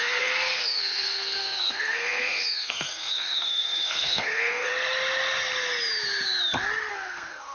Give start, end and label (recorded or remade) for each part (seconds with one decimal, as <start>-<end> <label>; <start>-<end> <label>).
0.0-4.7 remade; 4.7-6.9 recorded; 6.9-7.5 remade